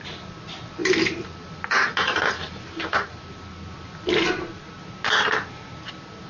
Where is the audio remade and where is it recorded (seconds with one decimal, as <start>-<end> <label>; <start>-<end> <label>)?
0.0-6.3 recorded